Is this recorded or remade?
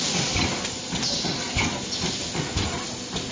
recorded